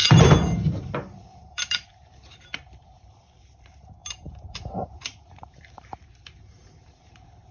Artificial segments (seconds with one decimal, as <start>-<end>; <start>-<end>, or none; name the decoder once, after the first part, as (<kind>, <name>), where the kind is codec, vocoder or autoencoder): 0.0-7.5 (vocoder, BigVGAN v2)